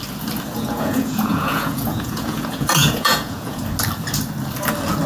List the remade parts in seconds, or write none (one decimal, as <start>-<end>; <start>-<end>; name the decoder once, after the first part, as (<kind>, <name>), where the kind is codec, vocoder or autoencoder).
0.5-3.6 (vocoder, Vocos)